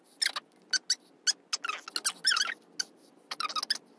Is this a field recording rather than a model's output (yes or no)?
yes